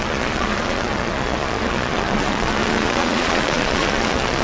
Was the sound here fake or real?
fake